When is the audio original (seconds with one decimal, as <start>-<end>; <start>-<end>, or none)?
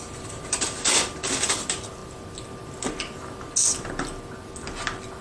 2.0-5.2